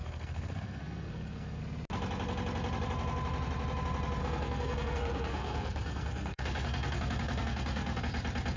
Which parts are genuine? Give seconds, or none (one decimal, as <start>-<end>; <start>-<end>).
1.6-4.2; 8.0-8.6